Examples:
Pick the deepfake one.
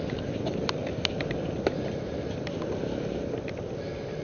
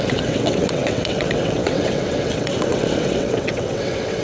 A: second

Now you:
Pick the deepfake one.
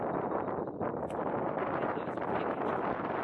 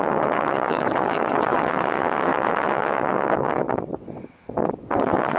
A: second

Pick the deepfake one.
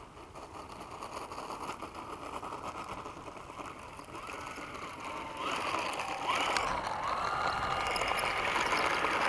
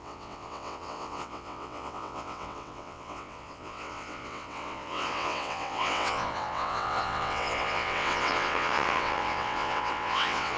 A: second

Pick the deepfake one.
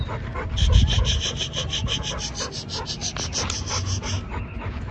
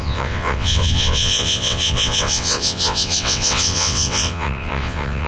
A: second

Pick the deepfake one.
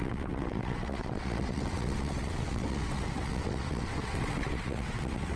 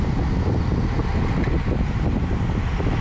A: first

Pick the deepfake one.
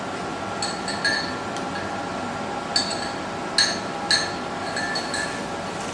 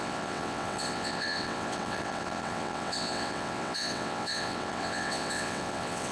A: second